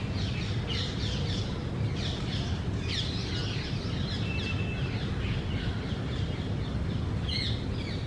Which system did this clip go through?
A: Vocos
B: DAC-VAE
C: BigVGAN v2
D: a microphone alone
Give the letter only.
D